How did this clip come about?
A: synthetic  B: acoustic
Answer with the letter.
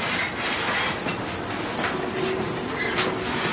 B